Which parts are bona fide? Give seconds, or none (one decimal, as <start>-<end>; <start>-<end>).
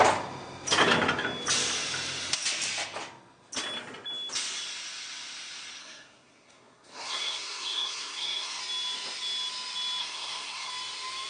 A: 0.0-5.8; 8.6-10.0; 10.7-11.3